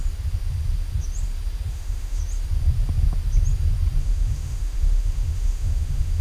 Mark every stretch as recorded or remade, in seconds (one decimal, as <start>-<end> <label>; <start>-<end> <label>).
0.0-1.7 recorded; 1.7-2.2 remade; 2.2-4.0 recorded; 4.0-6.2 remade